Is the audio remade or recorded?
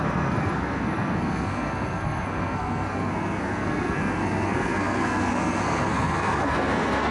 remade